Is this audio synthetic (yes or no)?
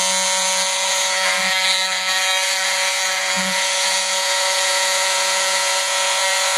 yes